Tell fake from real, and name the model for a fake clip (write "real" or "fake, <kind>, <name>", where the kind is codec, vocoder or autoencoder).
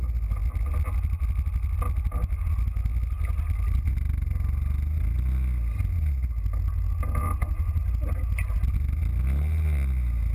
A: real